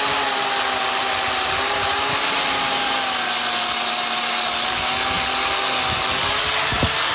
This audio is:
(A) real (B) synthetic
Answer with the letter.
A